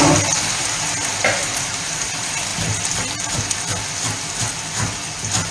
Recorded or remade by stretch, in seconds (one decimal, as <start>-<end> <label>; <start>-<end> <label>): 0.0-1.4 recorded; 1.4-2.1 remade; 2.1-5.5 recorded